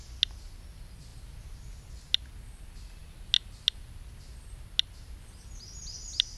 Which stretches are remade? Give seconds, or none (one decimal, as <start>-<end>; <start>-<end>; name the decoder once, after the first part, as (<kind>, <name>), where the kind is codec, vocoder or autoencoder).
none